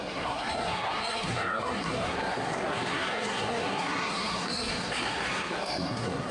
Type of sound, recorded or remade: remade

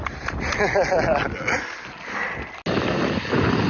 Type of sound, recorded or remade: recorded